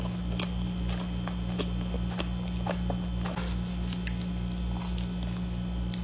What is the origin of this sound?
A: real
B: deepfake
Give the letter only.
A